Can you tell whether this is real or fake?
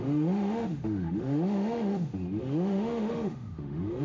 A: fake